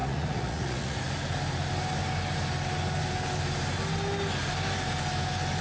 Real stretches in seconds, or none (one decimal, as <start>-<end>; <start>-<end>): 1.0-5.6